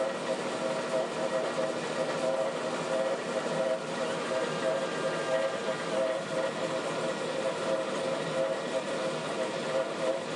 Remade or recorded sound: recorded